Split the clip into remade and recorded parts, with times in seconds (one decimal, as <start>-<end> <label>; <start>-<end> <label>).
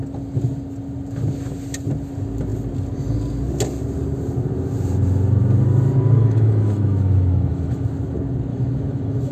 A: 0.0-6.2 recorded; 6.2-7.9 remade; 7.9-8.5 recorded; 8.5-9.3 remade